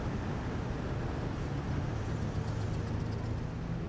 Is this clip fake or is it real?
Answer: real